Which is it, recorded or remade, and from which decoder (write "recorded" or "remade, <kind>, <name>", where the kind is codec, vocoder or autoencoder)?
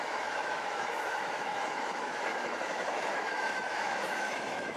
remade, autoencoder, DAC-VAE